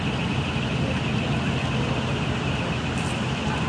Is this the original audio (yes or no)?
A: yes